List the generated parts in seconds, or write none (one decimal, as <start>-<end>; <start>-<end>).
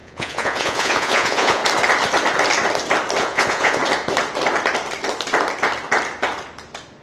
0.0-1.6; 3.2-3.8